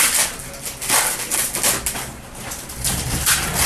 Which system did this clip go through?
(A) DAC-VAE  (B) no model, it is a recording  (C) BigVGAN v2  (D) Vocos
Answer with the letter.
B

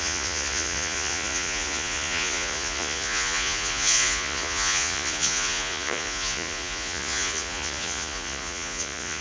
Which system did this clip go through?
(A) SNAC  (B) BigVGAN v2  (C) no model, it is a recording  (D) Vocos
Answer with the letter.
D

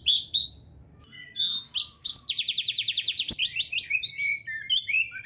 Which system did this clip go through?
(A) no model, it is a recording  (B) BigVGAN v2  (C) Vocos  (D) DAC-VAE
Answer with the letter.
A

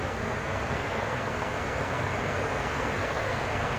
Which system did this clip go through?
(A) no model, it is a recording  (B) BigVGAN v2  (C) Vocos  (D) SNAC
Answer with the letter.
D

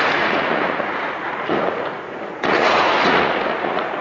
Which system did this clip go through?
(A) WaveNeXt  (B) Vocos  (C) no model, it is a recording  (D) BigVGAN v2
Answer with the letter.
B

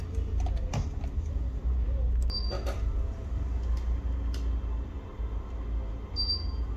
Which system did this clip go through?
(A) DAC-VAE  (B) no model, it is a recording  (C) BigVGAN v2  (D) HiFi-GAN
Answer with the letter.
B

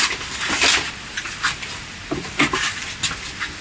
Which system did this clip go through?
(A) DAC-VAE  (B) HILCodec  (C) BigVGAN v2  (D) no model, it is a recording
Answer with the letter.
D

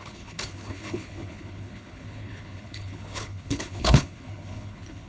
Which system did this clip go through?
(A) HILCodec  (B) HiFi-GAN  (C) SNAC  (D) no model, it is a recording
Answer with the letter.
A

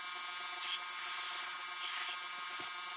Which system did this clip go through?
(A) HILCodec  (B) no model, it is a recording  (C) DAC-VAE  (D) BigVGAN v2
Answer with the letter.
B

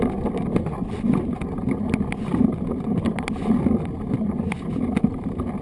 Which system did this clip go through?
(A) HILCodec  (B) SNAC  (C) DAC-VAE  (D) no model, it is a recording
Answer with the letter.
D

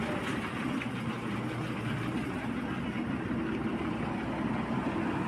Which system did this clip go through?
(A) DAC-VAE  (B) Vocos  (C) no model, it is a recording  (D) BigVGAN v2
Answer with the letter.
C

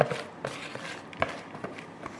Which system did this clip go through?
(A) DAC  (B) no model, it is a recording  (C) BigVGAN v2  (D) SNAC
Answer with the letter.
B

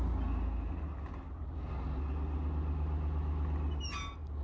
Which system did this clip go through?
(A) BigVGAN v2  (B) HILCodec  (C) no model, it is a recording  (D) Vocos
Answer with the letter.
C